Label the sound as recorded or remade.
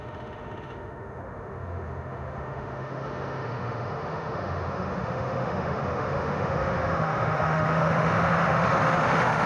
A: remade